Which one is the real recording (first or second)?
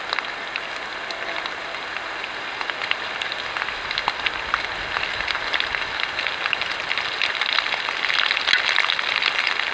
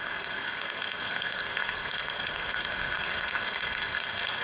first